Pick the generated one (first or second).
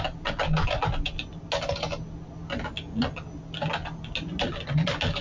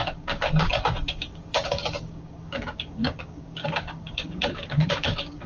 second